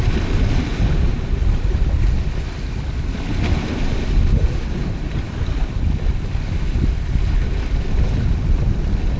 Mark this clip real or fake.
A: real